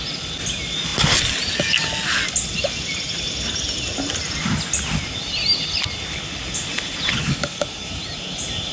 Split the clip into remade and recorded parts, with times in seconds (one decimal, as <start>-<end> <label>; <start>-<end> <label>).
0.0-7.2 recorded; 7.2-8.0 remade; 8.0-8.7 recorded